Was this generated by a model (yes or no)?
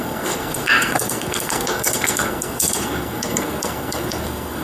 yes